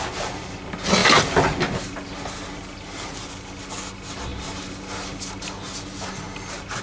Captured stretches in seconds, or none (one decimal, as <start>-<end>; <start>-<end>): 0.0-6.8